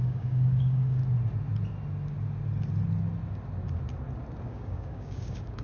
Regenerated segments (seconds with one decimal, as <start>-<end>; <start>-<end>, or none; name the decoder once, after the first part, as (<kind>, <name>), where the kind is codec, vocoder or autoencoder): 0.0-1.0 (codec, DAC); 4.4-5.6